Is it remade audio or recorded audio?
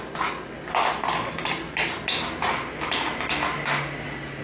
recorded